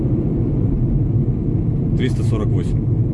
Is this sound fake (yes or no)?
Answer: no